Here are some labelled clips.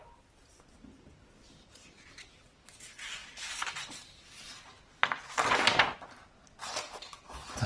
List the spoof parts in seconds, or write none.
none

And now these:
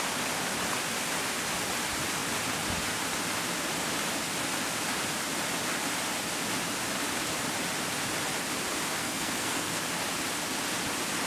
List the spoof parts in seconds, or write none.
9.0-9.8 (codec, SNAC)

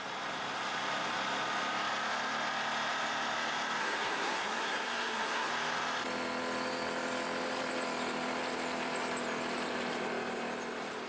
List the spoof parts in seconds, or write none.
3.8-5.5 (codec, SNAC)

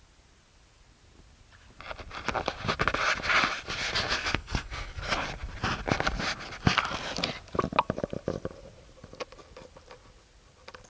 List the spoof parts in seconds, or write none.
4.2-5.0 (codec, SNAC)

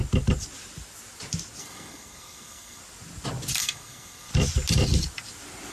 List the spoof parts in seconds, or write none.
1.6-2.8 (codec, SNAC); 3.6-4.3

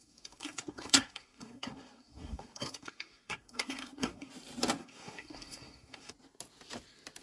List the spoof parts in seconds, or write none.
0.0-4.3 (codec, SNAC); 4.8-6.1

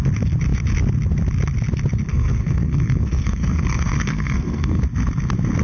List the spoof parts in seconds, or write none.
2.1-4.8 (codec, SNAC)